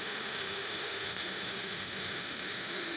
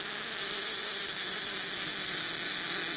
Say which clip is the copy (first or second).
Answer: first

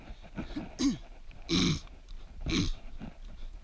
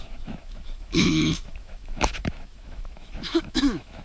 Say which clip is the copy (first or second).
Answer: second